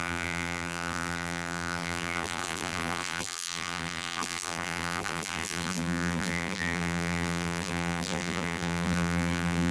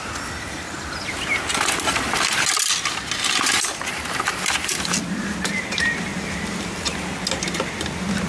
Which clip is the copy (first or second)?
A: first